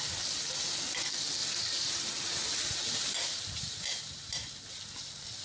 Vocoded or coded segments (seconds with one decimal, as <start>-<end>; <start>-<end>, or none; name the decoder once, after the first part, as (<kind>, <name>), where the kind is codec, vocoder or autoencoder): 1.4-4.6 (vocoder, BigVGAN v2)